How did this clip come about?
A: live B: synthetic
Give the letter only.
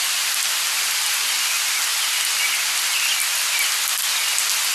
A